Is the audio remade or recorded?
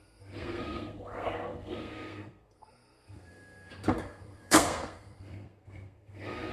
remade